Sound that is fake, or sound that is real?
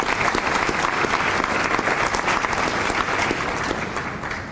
real